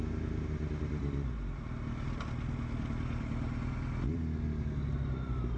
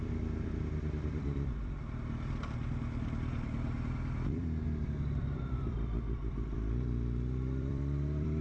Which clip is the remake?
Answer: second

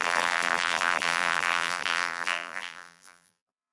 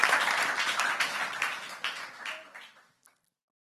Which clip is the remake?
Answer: first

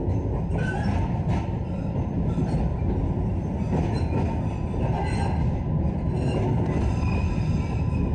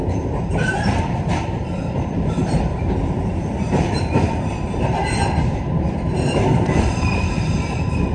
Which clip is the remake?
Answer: second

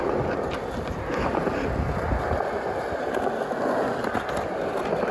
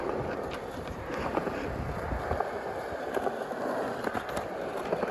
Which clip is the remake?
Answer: second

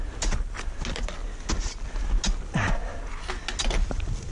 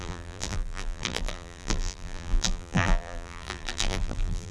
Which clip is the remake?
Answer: second